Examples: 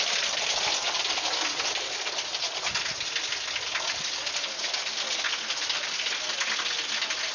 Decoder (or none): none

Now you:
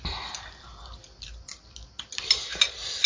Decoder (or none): none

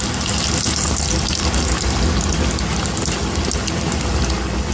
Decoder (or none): none